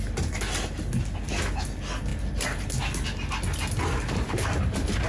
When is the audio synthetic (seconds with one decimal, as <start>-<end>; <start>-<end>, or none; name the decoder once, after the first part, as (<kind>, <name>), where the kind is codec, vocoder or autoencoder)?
none